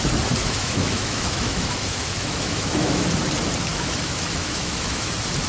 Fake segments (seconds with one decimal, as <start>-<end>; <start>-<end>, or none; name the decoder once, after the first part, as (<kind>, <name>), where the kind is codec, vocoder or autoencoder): 0.4-3.1 (autoencoder, DAC-VAE); 3.7-5.1